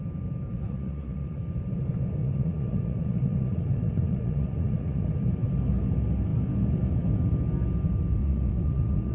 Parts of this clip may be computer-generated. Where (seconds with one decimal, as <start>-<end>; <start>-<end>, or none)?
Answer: 0.5-1.4; 2.2-5.1; 8.2-9.1